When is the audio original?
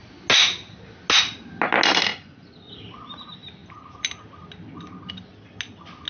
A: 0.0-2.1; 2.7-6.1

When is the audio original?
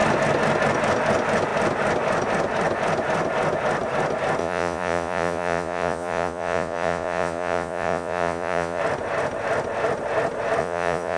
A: 0.0-4.4; 8.8-10.6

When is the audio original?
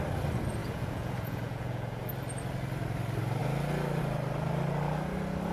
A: 0.0-0.6; 2.1-5.5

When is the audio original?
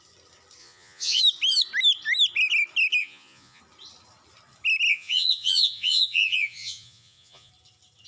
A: 0.0-0.6; 1.2-3.0; 3.6-4.9; 7.5-8.1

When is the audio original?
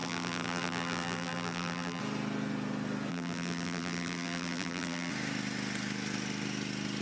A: 2.0-3.1; 5.1-7.0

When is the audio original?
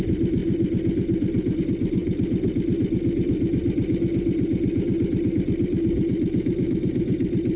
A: 0.0-7.6